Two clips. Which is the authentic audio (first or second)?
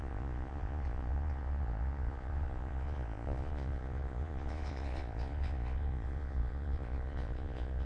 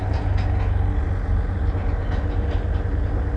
second